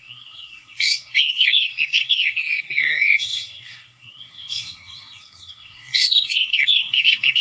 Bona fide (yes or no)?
no